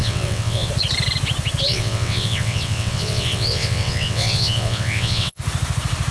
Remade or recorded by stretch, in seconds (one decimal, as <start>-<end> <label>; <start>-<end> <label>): 0.0-0.7 remade; 0.7-1.7 recorded; 1.7-5.4 remade; 5.4-6.1 recorded